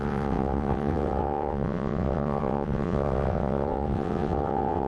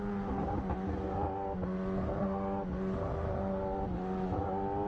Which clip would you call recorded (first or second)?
second